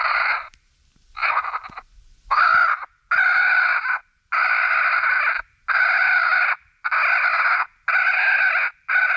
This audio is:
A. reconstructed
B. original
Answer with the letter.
B